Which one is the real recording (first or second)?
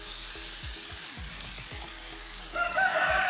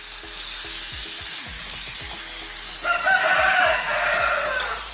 second